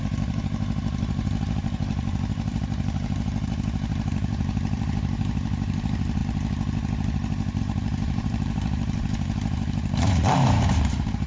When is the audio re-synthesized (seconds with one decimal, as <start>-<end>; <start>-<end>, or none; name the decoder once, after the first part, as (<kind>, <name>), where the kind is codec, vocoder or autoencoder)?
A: 0.0-6.2 (vocoder, BigVGAN v2); 7.6-11.3